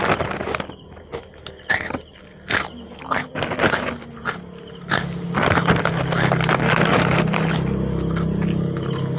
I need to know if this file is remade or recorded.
recorded